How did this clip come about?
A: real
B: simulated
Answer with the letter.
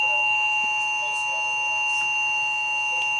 A